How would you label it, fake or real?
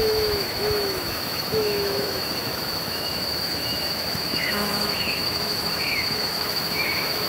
fake